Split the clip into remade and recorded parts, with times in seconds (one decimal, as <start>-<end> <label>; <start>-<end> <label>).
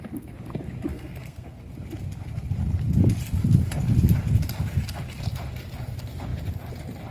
0.0-0.9 recorded; 0.9-1.6 remade; 1.6-7.1 recorded